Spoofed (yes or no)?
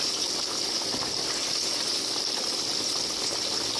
no